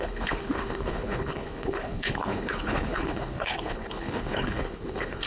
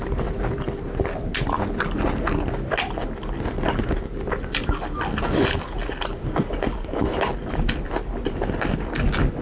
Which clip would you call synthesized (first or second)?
first